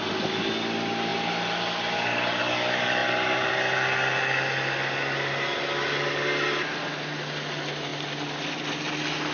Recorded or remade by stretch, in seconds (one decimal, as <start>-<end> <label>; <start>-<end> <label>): 0.0-3.0 recorded; 3.0-3.5 remade; 3.5-9.3 recorded